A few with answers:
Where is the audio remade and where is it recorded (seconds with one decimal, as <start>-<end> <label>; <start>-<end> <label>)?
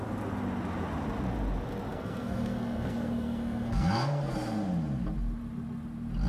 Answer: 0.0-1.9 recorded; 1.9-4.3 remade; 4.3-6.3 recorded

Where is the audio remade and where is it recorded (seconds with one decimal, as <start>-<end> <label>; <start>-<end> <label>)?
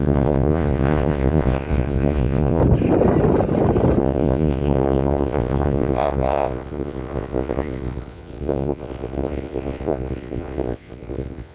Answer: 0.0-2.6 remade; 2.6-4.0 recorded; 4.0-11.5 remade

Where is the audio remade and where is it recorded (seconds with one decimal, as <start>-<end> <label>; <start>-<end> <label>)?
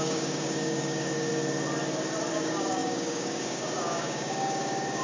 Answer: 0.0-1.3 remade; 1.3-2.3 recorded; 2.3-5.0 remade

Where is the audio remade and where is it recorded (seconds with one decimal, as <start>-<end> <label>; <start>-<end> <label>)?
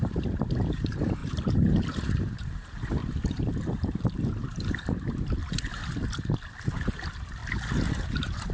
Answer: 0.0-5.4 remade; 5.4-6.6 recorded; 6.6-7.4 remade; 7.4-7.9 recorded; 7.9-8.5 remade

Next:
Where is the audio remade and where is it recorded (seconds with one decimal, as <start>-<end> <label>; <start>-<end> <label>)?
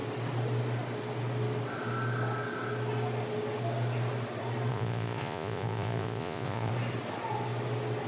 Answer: 0.0-4.7 recorded; 4.7-6.7 remade; 6.7-8.1 recorded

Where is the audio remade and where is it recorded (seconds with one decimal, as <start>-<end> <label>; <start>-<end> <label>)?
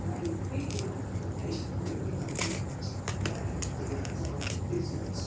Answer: 0.0-5.3 recorded